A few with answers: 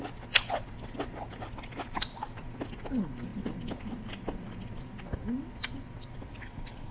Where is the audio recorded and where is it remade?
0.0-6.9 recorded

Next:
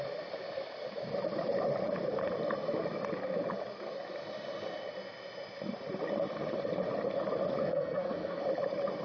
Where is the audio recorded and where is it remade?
0.0-7.6 recorded; 7.6-8.4 remade; 8.4-9.0 recorded